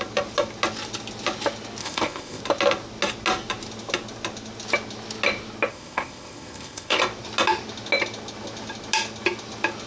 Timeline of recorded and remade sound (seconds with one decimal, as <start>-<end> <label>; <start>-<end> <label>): 0.0-1.8 recorded; 1.8-2.4 remade; 2.4-5.7 recorded; 5.7-7.0 remade; 7.0-9.9 recorded